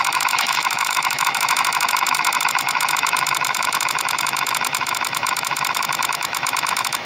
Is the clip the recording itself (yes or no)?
no